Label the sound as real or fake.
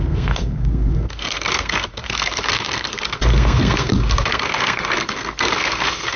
fake